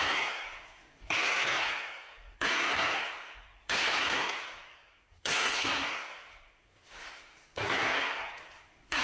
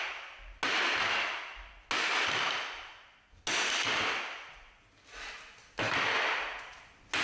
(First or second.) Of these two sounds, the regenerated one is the first